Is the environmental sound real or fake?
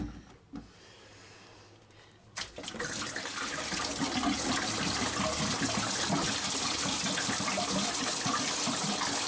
real